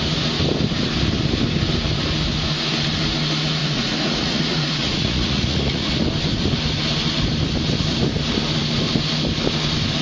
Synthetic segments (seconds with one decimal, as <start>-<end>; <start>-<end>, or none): 3.6-6.0